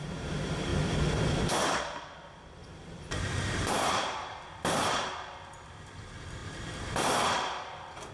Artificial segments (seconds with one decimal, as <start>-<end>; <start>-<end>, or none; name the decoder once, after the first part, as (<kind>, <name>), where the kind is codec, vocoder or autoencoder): 2.6-5.1 (vocoder, BigVGAN v2)